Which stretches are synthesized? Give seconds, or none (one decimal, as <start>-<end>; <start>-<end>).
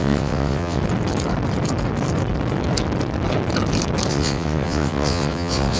0.0-0.8; 4.1-5.8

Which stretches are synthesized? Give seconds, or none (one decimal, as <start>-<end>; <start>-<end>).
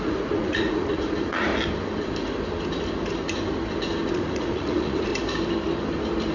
0.0-1.5; 4.1-5.1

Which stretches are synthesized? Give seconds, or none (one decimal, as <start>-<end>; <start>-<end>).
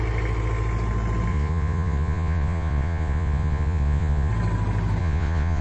1.3-4.3; 5.0-5.6